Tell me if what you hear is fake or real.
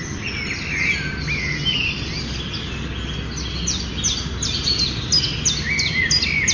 real